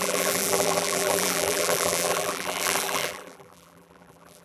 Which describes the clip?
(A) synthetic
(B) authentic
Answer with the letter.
A